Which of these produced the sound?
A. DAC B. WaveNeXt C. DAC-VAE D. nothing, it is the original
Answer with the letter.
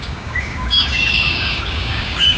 A